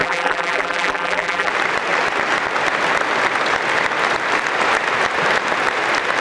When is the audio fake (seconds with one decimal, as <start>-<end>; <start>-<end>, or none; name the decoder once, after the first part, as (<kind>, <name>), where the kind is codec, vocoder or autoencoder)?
0.0-1.5 (vocoder, BigVGAN v2)